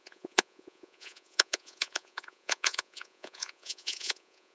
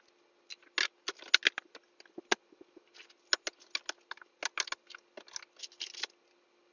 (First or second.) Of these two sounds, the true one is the second